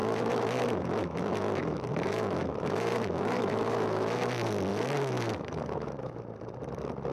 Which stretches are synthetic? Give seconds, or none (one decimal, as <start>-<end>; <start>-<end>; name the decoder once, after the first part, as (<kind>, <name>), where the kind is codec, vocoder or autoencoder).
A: 0.0-4.3 (autoencoder, DAC-VAE); 4.7-6.2